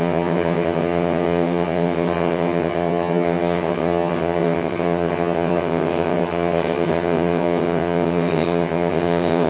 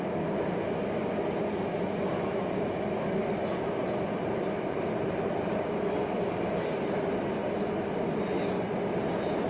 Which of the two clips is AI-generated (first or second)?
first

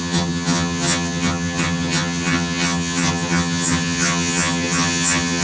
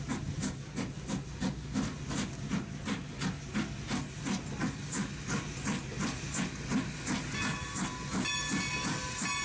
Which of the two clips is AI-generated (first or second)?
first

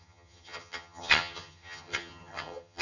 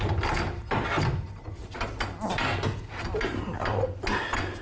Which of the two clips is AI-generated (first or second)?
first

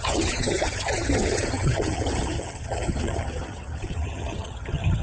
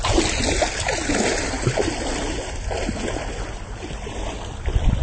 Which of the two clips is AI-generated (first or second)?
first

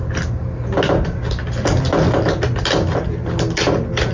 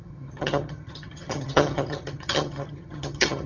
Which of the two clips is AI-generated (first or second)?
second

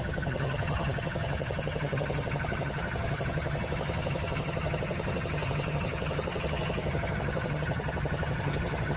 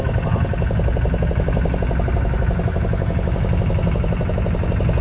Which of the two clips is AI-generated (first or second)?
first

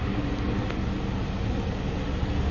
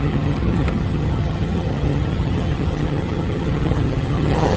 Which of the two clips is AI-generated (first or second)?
second